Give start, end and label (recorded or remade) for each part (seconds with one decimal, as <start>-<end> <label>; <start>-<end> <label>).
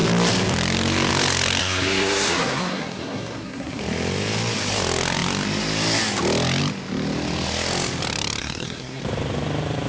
0.0-1.6 recorded; 1.6-3.8 remade; 3.8-8.4 recorded; 8.4-9.0 remade; 9.0-9.9 recorded